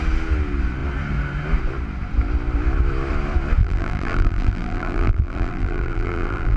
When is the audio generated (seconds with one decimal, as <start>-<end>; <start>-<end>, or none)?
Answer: 3.6-6.6